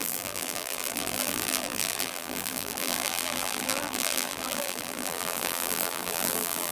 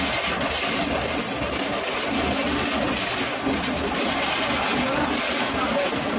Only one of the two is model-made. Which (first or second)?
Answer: first